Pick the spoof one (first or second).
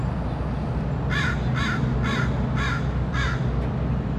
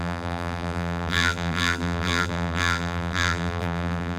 second